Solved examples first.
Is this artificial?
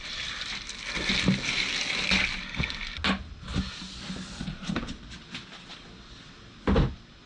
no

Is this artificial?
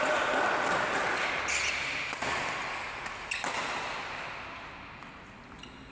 no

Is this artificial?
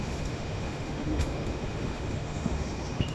yes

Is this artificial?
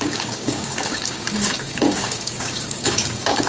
yes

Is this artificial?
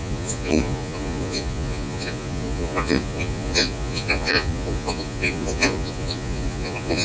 yes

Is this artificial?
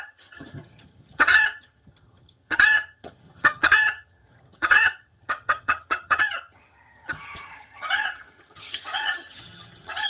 yes